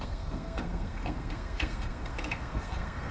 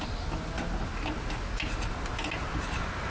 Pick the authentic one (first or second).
second